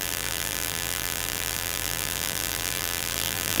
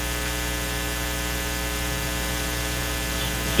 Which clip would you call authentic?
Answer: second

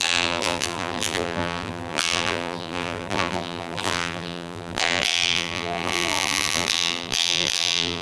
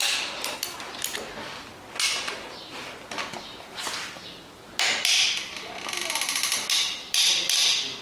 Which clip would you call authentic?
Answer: second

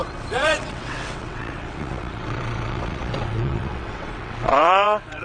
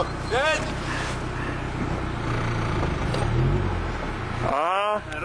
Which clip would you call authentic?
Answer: second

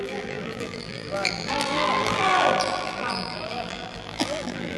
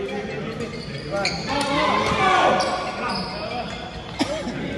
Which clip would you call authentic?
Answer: second